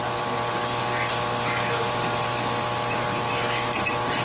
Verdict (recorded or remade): recorded